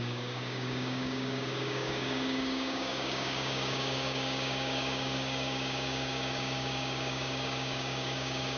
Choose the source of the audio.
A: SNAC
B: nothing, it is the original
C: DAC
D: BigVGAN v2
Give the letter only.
C